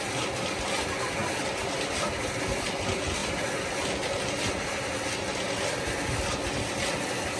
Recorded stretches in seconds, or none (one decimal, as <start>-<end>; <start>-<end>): 0.0-7.4